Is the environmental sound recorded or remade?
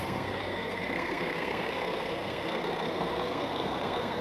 remade